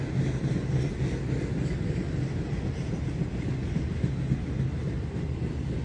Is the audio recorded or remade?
recorded